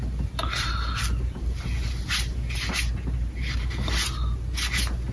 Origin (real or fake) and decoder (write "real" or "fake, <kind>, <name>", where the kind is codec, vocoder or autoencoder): real